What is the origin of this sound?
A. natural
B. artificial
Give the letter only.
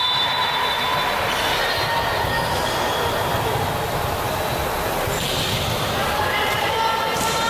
A